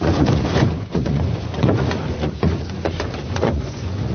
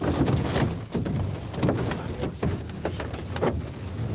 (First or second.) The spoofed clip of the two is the first